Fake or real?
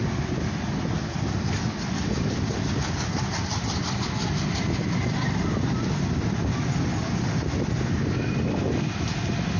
real